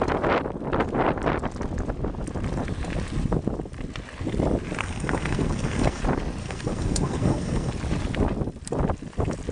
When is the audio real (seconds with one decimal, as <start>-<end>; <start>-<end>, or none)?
0.0-4.8; 6.0-6.4; 7.7-9.5